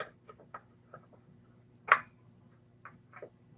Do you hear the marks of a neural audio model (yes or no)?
no